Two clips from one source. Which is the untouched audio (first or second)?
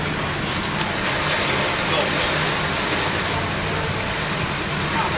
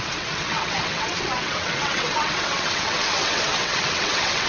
first